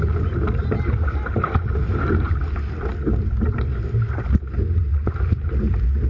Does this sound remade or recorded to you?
recorded